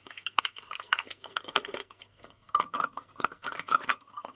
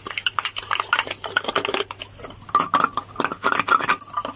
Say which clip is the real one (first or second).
second